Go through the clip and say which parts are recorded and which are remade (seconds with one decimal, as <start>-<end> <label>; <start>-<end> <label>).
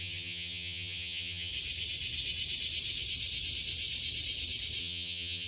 0.0-1.5 remade; 1.5-4.8 recorded; 4.8-5.5 remade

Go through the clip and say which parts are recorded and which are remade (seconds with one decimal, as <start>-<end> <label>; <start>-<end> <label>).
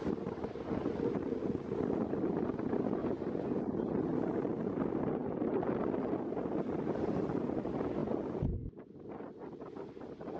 0.0-3.0 recorded; 3.0-3.6 remade; 3.6-10.4 recorded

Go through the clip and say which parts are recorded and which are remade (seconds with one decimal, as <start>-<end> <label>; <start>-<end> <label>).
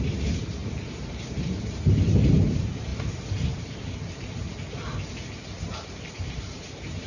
0.0-2.9 remade; 2.9-6.1 recorded; 6.1-7.1 remade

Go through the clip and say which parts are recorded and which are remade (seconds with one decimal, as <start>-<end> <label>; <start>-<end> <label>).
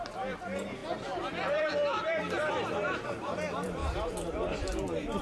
0.0-3.8 remade; 3.8-4.3 recorded; 4.3-5.2 remade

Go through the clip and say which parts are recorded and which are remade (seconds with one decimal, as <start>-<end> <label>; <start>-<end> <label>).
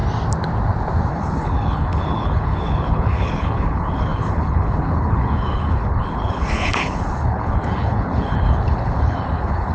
0.0-1.1 recorded; 1.1-9.7 remade